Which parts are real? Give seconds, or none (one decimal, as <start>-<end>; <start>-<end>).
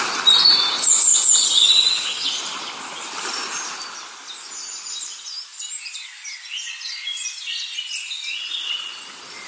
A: 0.0-5.5; 6.7-7.5; 8.9-9.5